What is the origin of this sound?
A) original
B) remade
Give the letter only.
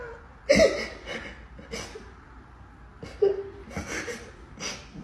A